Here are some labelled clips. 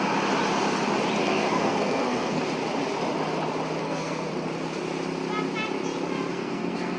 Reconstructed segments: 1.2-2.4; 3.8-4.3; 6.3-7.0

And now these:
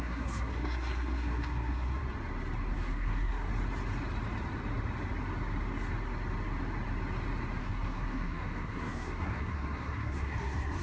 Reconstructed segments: 0.0-2.0; 2.7-3.5; 7.6-10.8

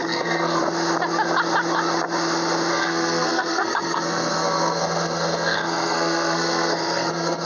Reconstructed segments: 0.0-0.6; 2.7-7.5

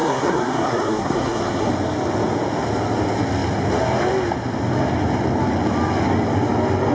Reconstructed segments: 0.0-1.7

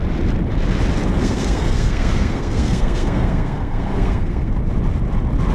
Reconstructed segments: 1.2-4.5